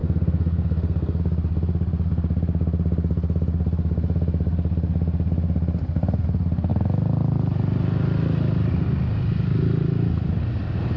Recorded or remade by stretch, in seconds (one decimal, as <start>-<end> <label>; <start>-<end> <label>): 0.0-1.2 remade; 1.2-11.0 recorded